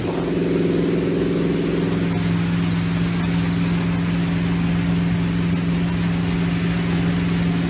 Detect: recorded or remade recorded